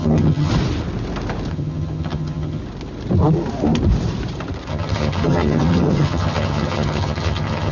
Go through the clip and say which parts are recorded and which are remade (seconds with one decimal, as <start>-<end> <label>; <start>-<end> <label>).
0.0-0.5 remade; 0.5-1.5 recorded; 1.5-2.6 remade; 2.6-4.7 recorded; 4.7-7.7 remade